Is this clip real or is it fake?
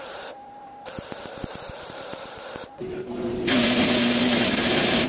fake